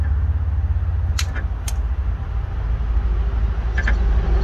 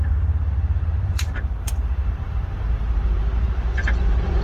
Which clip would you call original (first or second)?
first